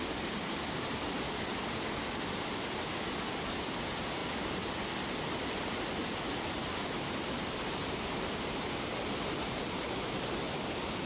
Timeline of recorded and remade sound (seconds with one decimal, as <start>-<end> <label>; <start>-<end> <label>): 0.0-11.1 recorded